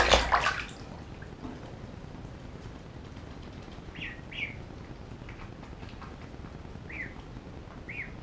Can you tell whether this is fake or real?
real